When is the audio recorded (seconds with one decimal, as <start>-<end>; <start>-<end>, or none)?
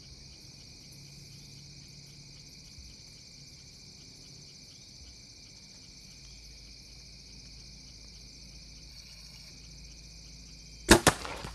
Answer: 0.0-8.9; 9.5-11.5